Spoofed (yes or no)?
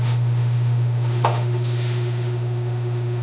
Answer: yes